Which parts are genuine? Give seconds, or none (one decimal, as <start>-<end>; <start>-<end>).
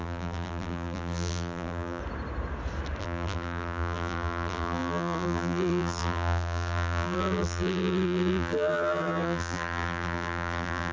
2.0-3.0